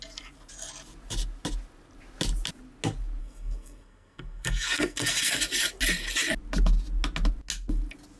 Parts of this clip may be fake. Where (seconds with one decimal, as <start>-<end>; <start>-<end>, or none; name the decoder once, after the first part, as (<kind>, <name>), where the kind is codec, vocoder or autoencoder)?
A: 3.2-5.4 (codec, SNAC)